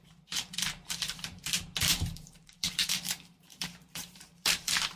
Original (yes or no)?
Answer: no